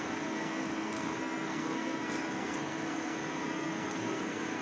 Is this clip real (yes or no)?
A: no